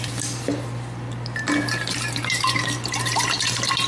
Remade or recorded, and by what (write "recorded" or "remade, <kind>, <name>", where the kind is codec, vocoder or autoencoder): recorded